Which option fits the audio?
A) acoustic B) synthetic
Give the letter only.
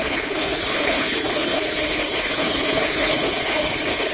B